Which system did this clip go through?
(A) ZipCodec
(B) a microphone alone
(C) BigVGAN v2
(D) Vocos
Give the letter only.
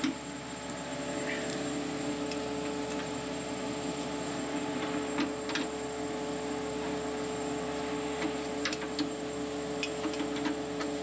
B